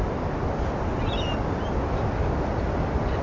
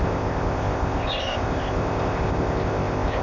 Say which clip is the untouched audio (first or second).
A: first